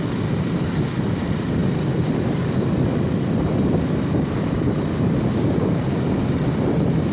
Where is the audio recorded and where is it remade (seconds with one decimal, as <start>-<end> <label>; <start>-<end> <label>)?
0.0-7.1 recorded